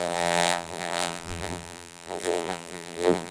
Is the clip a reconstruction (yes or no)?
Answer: yes